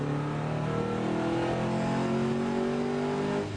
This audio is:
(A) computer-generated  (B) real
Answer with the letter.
B